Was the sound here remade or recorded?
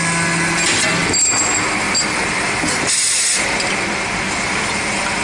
recorded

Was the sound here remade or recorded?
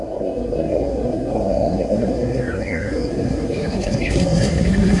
remade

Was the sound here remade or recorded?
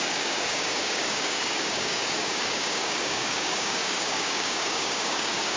remade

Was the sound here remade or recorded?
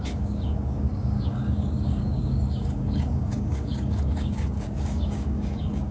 remade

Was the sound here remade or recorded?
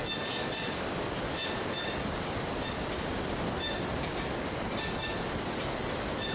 recorded